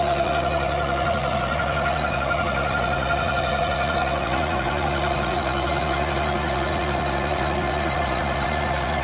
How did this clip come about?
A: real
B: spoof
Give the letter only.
B